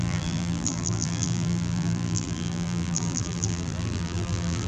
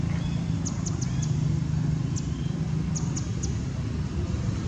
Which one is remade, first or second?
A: first